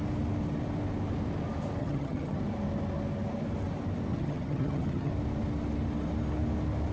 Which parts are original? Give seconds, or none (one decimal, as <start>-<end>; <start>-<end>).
0.0-1.8; 2.4-4.1; 5.1-6.9